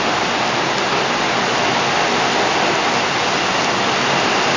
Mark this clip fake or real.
real